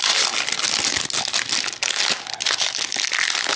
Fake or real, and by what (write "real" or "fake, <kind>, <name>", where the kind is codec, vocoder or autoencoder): real